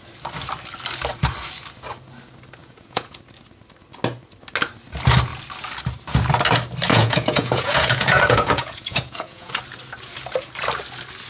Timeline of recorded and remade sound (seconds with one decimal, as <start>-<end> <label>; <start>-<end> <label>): 0.0-2.6 recorded; 2.6-3.2 remade; 3.2-6.9 recorded; 6.9-9.5 remade; 9.5-11.3 recorded